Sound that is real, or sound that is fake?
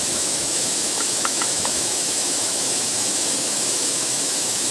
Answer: fake